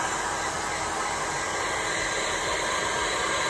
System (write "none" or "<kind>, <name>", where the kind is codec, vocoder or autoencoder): none